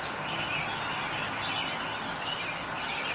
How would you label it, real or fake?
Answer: real